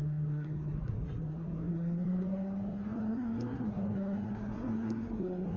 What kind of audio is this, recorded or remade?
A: remade